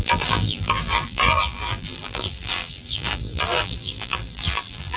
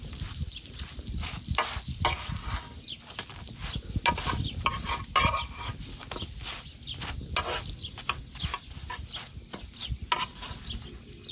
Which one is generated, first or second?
first